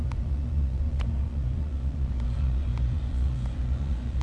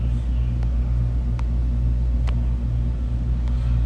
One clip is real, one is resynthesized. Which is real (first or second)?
second